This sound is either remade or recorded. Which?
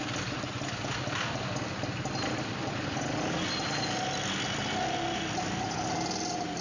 recorded